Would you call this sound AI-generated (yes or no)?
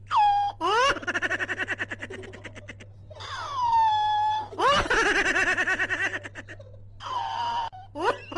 no